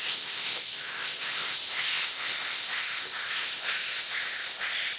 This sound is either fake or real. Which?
fake